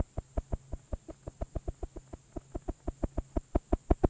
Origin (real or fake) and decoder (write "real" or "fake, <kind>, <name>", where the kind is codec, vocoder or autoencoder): real